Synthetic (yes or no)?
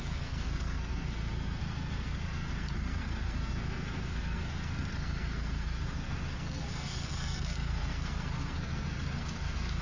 yes